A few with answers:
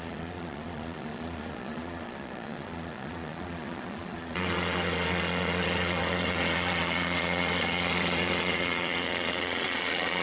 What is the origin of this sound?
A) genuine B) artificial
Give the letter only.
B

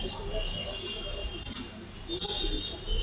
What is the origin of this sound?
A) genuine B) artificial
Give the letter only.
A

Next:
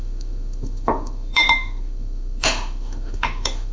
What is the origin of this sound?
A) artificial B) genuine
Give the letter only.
A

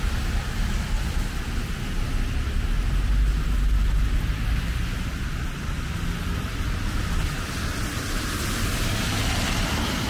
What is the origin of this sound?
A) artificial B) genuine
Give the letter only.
B